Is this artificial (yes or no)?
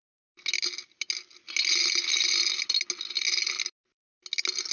no